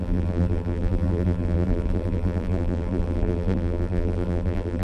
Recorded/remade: remade